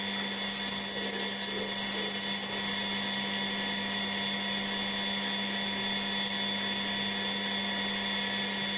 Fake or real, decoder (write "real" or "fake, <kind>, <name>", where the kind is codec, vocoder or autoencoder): real